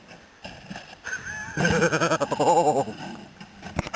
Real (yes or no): yes